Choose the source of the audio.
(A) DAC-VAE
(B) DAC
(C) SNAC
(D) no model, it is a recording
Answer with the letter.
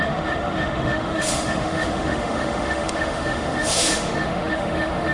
A